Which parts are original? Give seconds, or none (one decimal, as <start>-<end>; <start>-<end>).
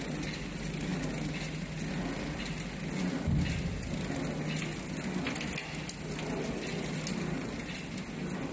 0.0-8.5